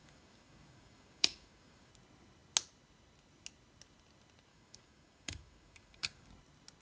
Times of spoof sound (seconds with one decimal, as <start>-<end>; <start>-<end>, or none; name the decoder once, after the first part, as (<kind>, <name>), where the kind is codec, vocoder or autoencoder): 0.0-1.9 (codec, DAC); 4.5-6.3